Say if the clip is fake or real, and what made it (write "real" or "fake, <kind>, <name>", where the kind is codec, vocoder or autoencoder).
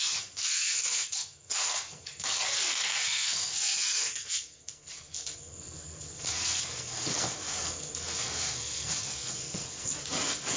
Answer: fake, codec, SNAC